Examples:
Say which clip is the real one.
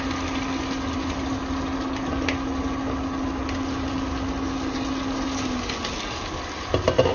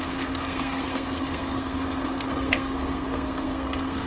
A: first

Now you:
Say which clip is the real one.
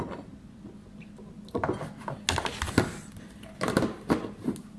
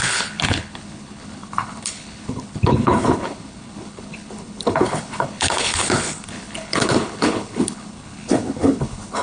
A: first